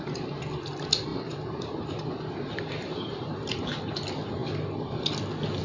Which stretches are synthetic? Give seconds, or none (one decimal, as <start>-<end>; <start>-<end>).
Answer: 1.1-3.9